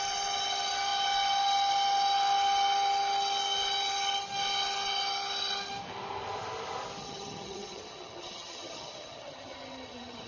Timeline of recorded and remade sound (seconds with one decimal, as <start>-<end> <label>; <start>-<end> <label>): 0.0-7.0 recorded; 7.0-10.3 remade